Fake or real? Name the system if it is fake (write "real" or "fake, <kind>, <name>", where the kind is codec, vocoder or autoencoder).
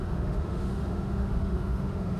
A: fake, autoencoder, DAC-VAE